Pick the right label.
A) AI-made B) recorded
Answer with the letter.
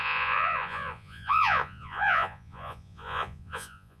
A